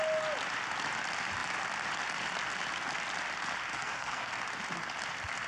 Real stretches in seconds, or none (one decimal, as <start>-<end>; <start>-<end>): 0.0-3.7; 4.3-5.5